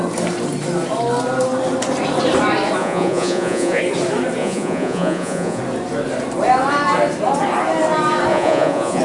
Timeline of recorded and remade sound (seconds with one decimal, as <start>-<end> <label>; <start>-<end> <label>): 0.0-2.8 recorded; 2.8-3.8 remade; 3.8-4.4 recorded; 4.4-5.6 remade; 5.6-8.3 recorded; 8.3-9.0 remade

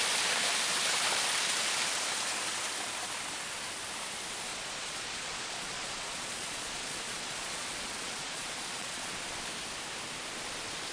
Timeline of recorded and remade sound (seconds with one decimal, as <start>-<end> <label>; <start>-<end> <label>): 0.0-4.5 recorded; 4.5-9.1 remade; 9.1-10.9 recorded

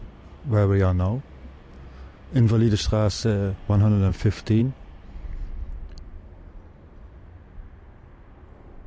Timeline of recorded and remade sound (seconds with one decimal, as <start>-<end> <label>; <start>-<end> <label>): 0.0-8.9 recorded

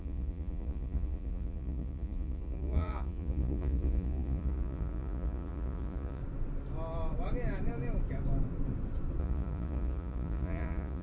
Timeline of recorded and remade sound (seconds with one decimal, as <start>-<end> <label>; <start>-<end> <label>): 0.0-6.2 remade; 6.2-9.2 recorded; 9.2-11.0 remade

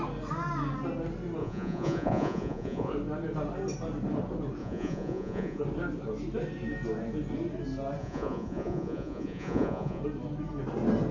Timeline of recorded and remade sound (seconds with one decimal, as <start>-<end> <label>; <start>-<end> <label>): 0.0-1.4 recorded; 1.4-2.9 remade; 2.9-4.6 recorded; 4.6-5.6 remade; 5.6-8.0 recorded; 8.0-10.0 remade; 10.0-11.1 recorded